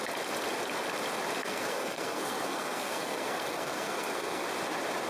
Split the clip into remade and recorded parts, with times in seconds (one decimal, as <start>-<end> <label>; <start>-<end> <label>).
0.0-1.4 recorded; 1.4-4.5 remade; 4.5-5.1 recorded